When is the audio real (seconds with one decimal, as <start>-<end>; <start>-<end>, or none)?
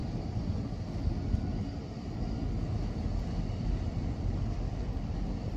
0.0-3.4